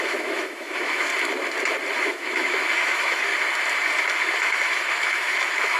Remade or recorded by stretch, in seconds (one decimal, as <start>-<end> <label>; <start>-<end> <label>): 0.0-1.1 remade; 1.1-2.0 recorded; 2.0-3.3 remade; 3.3-4.2 recorded; 4.2-5.8 remade